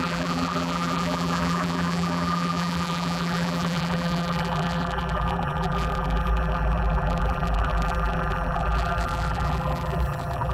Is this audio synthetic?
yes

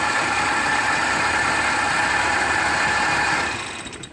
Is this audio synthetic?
no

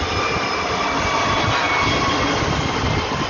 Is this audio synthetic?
no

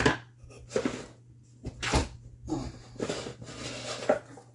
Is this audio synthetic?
no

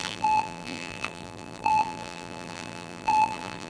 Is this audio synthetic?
yes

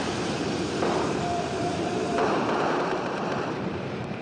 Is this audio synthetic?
yes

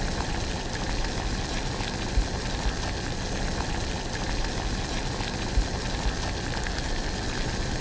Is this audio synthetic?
no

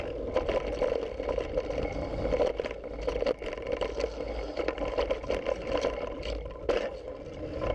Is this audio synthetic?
no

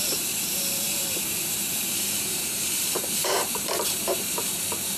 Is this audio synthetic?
yes